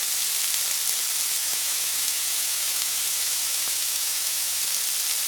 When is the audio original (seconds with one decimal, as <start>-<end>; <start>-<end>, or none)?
0.0-1.4; 4.6-5.3